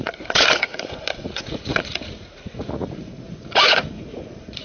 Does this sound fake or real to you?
fake